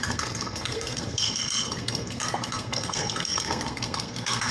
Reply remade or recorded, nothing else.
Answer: remade